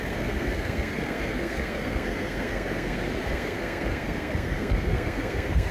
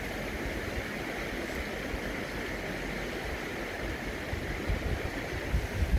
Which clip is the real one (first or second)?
second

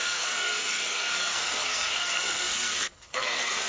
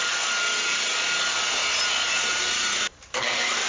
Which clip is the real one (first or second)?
second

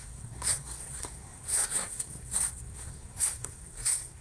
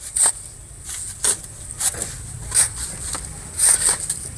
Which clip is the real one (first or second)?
second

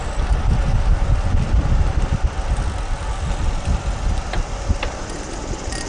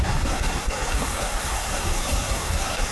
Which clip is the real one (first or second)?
first